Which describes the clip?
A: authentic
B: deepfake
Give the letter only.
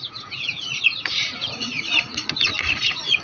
B